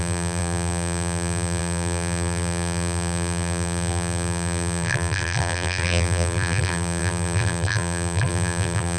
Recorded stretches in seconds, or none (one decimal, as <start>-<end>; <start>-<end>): none